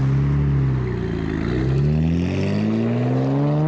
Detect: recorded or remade recorded